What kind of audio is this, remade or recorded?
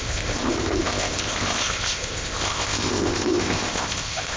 remade